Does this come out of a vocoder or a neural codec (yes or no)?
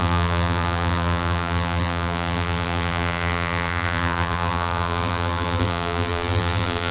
yes